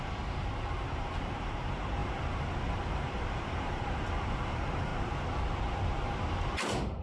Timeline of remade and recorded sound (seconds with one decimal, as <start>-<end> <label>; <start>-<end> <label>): 0.0-4.9 remade; 4.9-6.3 recorded; 6.3-7.0 remade